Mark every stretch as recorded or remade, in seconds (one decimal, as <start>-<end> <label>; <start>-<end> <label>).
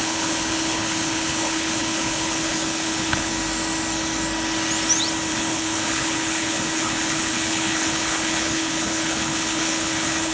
0.0-3.3 remade; 3.3-5.3 recorded; 5.3-10.3 remade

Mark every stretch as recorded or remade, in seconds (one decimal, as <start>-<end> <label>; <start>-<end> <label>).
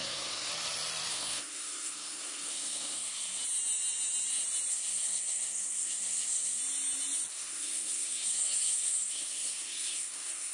0.0-0.5 remade; 0.5-1.1 recorded; 1.1-3.4 remade; 3.4-4.7 recorded; 4.7-6.6 remade; 6.6-7.3 recorded; 7.3-10.5 remade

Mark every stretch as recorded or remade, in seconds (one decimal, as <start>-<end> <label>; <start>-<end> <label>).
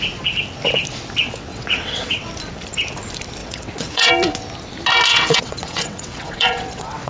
0.0-1.5 recorded; 1.5-2.3 remade; 2.3-3.4 recorded; 3.4-4.1 remade; 4.1-5.1 recorded; 5.1-7.1 remade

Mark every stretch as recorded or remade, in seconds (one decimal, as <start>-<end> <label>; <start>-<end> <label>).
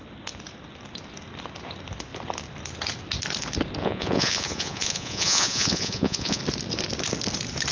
0.0-3.8 recorded; 3.8-6.4 remade; 6.4-7.7 recorded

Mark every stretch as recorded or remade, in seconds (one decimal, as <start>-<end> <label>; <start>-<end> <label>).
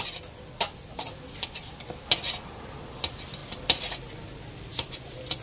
0.0-3.4 recorded; 3.4-4.0 remade; 4.0-4.7 recorded; 4.7-5.4 remade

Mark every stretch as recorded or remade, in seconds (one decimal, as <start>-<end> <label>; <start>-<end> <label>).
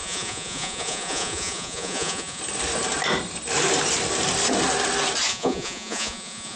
0.0-2.4 remade; 2.4-5.3 recorded; 5.3-6.6 remade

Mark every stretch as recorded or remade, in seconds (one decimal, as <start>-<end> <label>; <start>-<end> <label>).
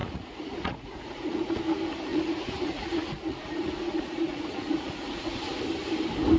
0.0-1.6 remade; 1.6-2.1 recorded; 2.1-5.4 remade; 5.4-6.4 recorded